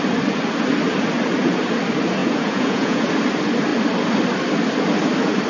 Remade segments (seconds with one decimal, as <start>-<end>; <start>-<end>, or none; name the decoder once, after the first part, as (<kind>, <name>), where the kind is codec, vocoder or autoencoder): 2.2-3.1 (vocoder, Vocos)